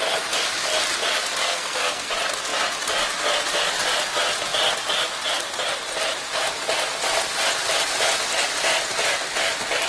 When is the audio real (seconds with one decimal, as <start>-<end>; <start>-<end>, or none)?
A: 0.0-1.4; 2.1-9.9